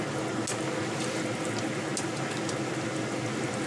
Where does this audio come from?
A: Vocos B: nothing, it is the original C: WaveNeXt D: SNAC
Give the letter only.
B